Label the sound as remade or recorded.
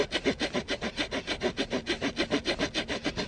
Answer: recorded